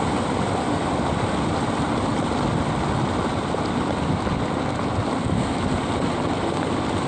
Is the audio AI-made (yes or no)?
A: no